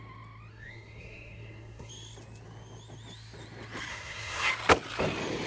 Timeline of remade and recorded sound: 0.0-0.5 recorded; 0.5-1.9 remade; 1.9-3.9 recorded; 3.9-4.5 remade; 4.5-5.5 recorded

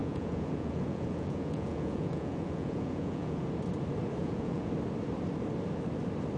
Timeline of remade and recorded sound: 0.0-3.5 remade; 3.5-4.2 recorded; 4.2-4.7 remade; 4.7-6.4 recorded

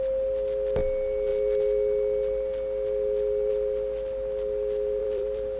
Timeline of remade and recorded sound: 0.0-5.0 recorded; 5.0-5.6 remade

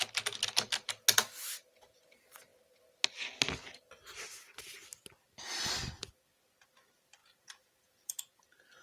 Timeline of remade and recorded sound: 0.0-7.2 recorded; 7.2-8.4 remade; 8.4-8.8 recorded

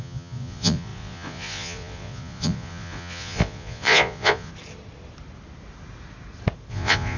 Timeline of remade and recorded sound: 0.0-4.5 remade; 4.5-6.7 recorded; 6.7-7.2 remade

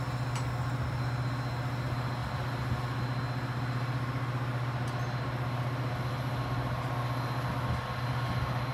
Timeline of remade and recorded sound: 0.0-8.7 recorded

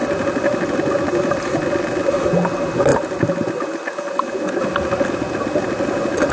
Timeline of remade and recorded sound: 0.0-6.3 recorded